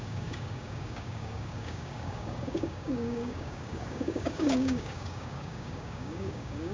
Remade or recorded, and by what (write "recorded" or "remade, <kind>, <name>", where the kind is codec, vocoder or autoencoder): remade, codec, DAC